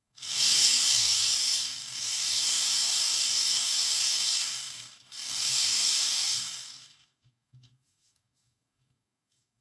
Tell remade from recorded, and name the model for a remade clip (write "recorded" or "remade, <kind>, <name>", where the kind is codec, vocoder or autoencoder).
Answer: remade, codec, DAC